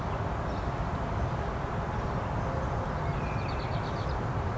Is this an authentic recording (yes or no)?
yes